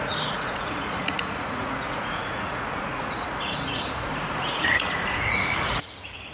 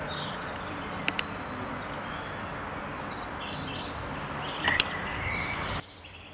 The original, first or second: second